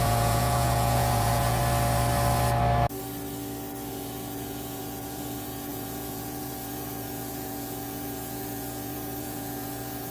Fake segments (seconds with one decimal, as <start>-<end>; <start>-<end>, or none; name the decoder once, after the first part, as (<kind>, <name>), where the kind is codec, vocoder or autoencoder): 0.0-1.6 (vocoder, Vocos); 3.9-10.1